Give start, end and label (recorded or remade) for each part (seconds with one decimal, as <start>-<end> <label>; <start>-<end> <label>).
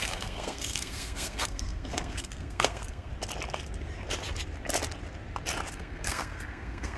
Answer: 0.0-3.1 remade; 3.1-5.7 recorded; 5.7-7.0 remade